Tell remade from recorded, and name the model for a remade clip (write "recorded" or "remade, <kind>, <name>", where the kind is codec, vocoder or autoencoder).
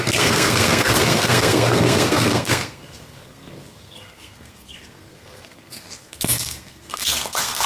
remade, codec, SNAC